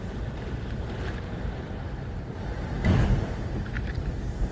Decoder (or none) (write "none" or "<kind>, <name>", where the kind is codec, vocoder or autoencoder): vocoder, BigVGAN v2